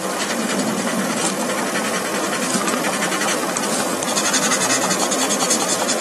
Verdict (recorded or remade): recorded